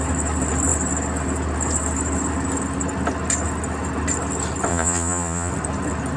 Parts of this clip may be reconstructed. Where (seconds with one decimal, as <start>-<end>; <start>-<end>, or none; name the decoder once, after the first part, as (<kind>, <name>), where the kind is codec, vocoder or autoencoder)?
4.7-5.5 (vocoder, Vocos)

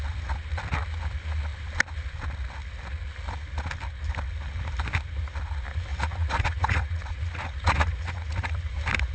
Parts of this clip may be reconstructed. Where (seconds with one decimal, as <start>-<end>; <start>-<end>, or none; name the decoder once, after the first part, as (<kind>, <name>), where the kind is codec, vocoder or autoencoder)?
5.9-8.7 (vocoder, Vocos)

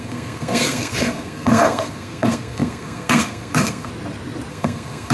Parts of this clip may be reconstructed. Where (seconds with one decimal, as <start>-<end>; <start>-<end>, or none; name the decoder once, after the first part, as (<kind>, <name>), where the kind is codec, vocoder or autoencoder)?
0.0-3.9 (codec, SNAC); 4.5-5.1

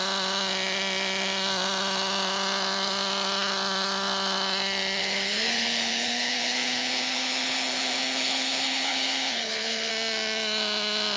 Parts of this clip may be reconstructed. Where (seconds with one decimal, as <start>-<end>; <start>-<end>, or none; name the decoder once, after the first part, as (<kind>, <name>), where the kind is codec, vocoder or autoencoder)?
5.0-9.9 (codec, HILCodec)

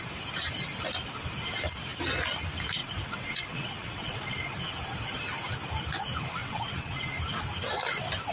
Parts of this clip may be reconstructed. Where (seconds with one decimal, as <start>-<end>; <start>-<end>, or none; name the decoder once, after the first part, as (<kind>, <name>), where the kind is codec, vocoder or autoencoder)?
2.8-4.6 (vocoder, WaveNeXt); 6.4-7.1

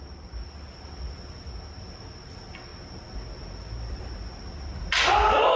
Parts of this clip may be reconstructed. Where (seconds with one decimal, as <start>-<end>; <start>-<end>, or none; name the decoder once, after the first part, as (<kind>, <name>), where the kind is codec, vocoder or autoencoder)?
none